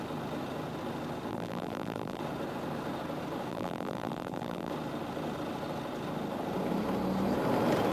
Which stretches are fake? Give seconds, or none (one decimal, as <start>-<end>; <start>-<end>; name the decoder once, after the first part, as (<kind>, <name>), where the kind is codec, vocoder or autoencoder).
1.3-2.2 (vocoder, BigVGAN v2); 3.5-4.7